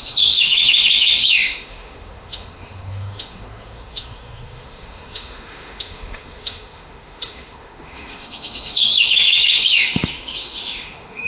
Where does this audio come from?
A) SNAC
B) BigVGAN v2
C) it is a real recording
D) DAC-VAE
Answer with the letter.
D